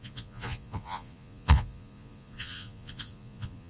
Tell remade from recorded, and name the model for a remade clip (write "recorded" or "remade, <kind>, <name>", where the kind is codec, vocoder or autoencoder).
remade, vocoder, Vocos